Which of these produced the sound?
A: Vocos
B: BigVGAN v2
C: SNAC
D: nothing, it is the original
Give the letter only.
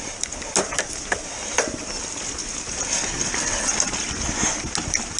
D